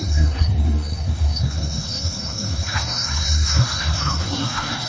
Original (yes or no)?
no